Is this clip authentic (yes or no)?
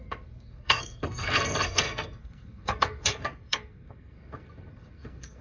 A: no